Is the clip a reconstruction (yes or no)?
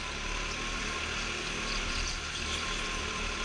no